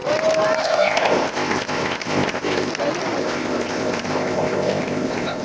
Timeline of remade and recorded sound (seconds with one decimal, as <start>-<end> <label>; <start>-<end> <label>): 0.0-0.6 recorded; 0.6-2.7 remade; 2.7-3.2 recorded; 3.2-5.4 remade